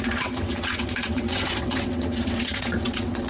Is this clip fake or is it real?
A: fake